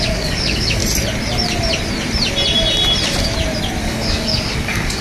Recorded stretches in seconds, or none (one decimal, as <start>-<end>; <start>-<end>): 0.8-3.8